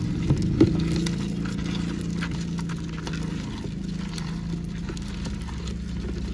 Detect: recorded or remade recorded